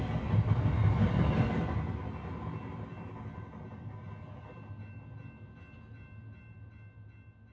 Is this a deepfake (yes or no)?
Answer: no